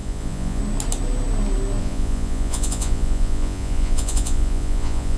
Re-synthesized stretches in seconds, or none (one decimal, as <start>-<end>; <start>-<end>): 0.0-0.6; 1.8-5.2